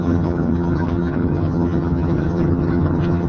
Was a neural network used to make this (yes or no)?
yes